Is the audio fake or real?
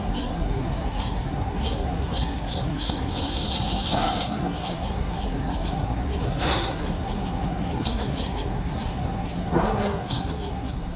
fake